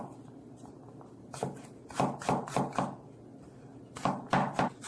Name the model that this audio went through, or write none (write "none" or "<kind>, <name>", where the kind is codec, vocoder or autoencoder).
none